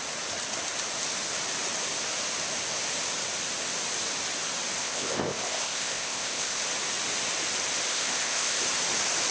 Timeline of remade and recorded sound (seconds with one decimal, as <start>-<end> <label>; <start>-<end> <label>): 0.0-4.8 recorded; 4.8-6.6 remade; 6.6-7.9 recorded; 7.9-8.6 remade; 8.6-9.3 recorded